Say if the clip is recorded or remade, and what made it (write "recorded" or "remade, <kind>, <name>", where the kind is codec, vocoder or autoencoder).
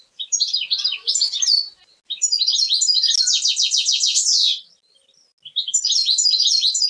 recorded